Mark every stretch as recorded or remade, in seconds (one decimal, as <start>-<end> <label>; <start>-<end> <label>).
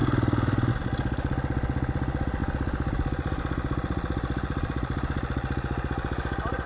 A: 0.0-6.7 recorded